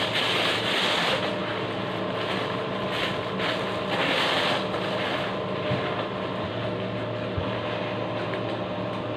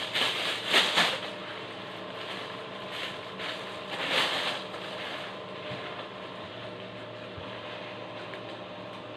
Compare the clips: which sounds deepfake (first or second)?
second